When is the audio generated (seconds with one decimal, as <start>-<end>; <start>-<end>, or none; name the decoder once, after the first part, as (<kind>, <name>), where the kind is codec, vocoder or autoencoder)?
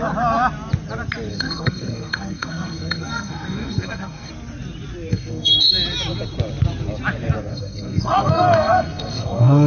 1.3-4.3 (codec, SNAC); 5.1-5.7; 7.5-9.7